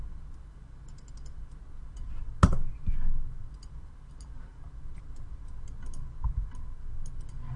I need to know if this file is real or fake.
real